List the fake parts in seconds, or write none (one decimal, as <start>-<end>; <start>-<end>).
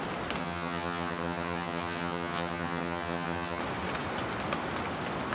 0.4-3.6